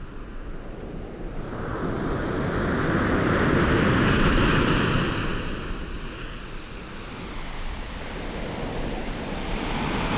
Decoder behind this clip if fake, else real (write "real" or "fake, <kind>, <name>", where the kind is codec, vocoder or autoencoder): real